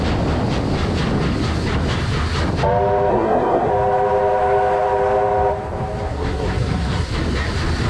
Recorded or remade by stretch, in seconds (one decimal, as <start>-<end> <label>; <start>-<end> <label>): 0.0-3.1 recorded; 3.1-3.7 remade; 3.7-6.1 recorded; 6.1-7.1 remade; 7.1-7.9 recorded